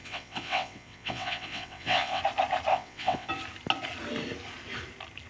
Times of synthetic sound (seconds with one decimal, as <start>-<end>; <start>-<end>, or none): 0.0-2.2; 2.7-3.3